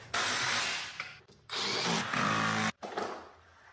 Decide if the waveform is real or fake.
real